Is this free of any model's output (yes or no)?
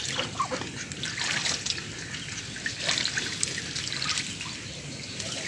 yes